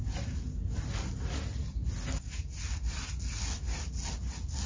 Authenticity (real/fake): real